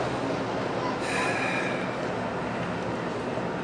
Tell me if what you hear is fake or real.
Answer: real